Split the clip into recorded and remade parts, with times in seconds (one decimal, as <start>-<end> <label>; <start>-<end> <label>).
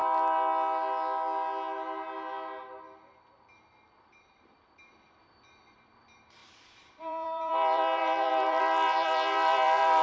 0.0-4.1 recorded; 4.1-10.0 remade